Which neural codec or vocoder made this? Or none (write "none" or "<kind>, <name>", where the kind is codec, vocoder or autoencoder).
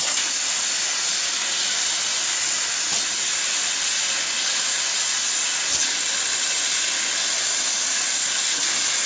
none